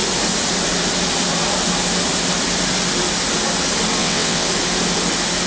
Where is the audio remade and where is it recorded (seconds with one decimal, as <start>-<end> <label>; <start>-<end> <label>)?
0.0-4.0 recorded; 4.0-4.5 remade; 4.5-5.5 recorded